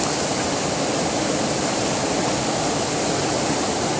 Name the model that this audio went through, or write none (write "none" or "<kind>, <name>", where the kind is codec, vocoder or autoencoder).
none